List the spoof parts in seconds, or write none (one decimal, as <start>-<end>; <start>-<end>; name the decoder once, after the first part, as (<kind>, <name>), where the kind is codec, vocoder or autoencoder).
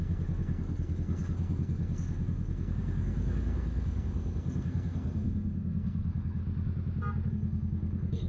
0.0-6.4 (codec, SNAC); 7.3-8.3